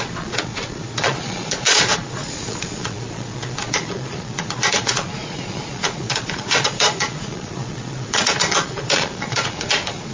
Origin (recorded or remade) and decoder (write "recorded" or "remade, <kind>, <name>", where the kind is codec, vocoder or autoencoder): remade, vocoder, Vocos